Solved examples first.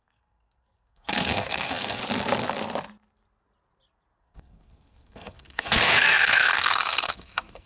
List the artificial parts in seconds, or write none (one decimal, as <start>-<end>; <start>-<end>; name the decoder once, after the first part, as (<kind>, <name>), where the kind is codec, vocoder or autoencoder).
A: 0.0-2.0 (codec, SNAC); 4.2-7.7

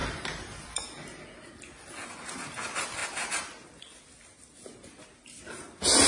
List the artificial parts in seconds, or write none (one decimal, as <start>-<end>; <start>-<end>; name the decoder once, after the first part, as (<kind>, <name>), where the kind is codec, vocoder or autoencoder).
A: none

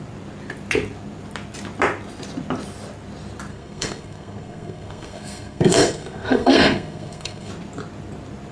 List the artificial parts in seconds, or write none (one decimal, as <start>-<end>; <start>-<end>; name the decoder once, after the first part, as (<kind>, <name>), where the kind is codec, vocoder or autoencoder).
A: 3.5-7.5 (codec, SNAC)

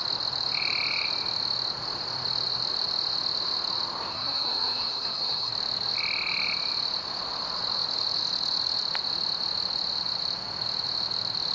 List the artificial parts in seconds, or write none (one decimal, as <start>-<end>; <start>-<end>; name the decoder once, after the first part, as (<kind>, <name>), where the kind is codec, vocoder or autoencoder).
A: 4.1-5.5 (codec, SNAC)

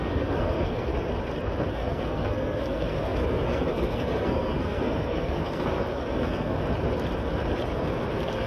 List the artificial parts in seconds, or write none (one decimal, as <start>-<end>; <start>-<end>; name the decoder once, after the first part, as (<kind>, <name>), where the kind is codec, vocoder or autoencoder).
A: 0.0-0.9 (codec, SNAC); 1.7-6.6; 8.1-8.5

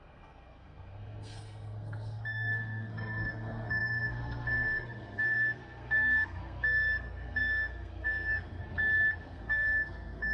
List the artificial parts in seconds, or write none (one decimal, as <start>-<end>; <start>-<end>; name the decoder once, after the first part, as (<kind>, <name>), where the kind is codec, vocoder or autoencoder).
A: 0.0-8.6 (codec, SNAC); 9.2-10.3

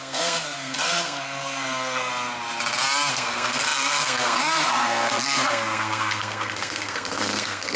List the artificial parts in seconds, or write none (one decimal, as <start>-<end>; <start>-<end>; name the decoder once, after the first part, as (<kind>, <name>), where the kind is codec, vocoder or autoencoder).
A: 0.0-2.1 (codec, SNAC); 3.1-7.8